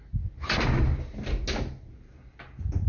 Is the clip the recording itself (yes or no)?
yes